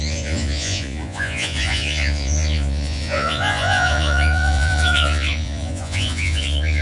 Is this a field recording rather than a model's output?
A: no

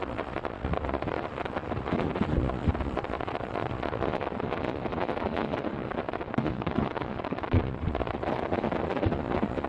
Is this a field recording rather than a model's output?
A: no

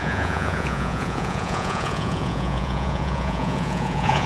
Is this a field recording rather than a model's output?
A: no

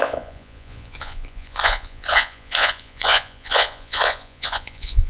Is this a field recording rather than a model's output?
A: no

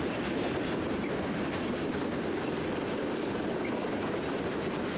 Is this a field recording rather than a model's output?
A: yes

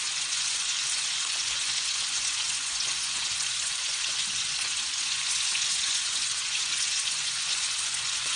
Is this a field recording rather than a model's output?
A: no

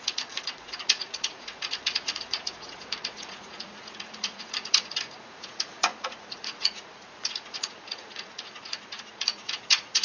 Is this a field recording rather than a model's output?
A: no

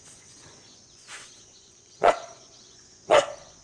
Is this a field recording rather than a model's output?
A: no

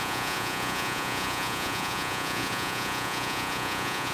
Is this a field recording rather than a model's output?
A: no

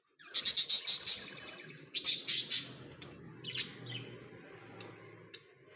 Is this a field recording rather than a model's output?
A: yes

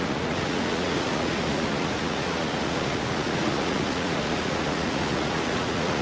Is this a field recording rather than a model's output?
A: no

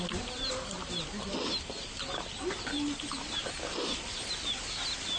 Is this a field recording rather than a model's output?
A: yes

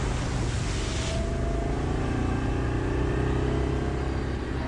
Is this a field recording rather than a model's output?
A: yes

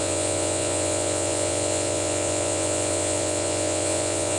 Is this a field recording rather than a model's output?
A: no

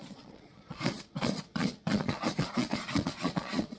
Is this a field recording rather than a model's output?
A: no